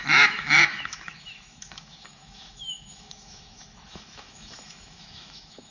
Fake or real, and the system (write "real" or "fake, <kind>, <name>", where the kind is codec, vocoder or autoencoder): fake, autoencoder, DAC-VAE